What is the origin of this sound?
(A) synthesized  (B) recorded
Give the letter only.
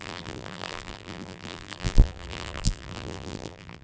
A